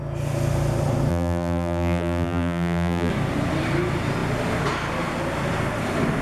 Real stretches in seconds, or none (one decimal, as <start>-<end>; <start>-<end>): 0.0-1.1; 3.1-6.2